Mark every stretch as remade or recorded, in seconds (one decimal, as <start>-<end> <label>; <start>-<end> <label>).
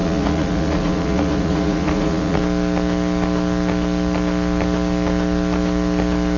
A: 0.0-2.4 remade; 2.4-6.4 recorded